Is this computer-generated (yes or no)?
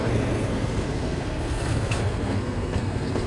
yes